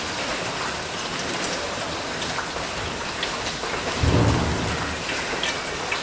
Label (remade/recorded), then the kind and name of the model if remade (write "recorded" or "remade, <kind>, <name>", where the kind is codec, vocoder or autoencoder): recorded